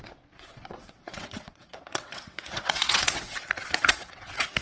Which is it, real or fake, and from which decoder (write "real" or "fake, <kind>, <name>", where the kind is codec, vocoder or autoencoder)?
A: fake, vocoder, WaveNeXt